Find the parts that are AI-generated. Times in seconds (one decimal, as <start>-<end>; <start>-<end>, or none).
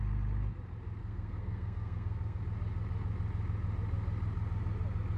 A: 1.0-2.4